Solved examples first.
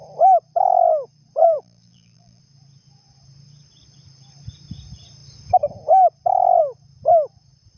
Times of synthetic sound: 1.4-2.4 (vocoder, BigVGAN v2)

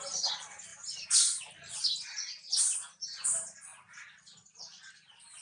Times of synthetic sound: none

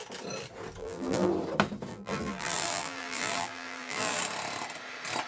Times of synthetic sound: 0.8-1.3 (vocoder, BigVGAN v2); 1.9-4.2

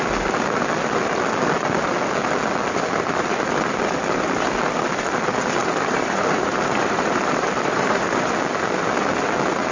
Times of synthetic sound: 5.6-8.3 (vocoder, BigVGAN v2)

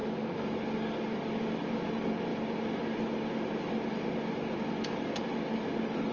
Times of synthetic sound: 1.6-2.3 (vocoder, BigVGAN v2)

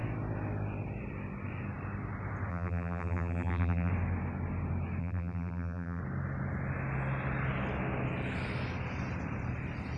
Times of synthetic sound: 2.5-3.9 (vocoder, BigVGAN v2); 5.0-6.0